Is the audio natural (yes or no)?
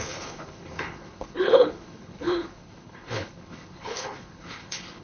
no